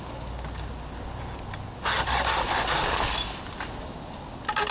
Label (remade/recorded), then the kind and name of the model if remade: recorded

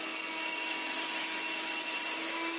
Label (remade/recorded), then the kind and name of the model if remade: recorded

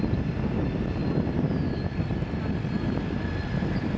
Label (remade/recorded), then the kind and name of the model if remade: remade, vocoder, BigVGAN v2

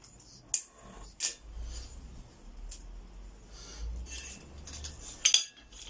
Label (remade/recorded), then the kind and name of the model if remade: recorded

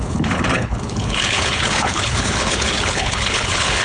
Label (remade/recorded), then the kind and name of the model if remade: remade, codec, HILCodec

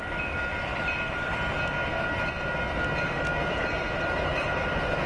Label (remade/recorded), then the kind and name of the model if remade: recorded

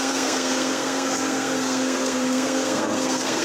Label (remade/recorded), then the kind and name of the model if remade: remade, codec, SNAC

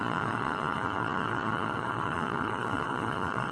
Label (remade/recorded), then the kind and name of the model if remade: remade, vocoder, Vocos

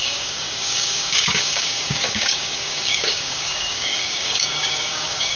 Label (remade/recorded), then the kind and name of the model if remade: remade, codec, DAC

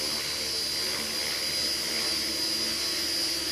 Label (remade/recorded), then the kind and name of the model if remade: recorded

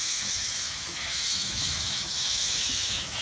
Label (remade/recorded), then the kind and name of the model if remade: remade, autoencoder, DAC-VAE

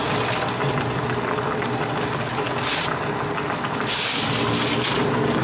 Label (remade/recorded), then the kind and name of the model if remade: recorded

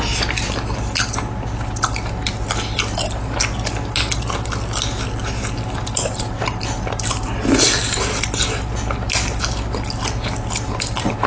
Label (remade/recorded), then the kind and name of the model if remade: recorded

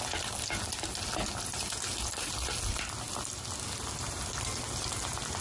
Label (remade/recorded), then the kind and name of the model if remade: recorded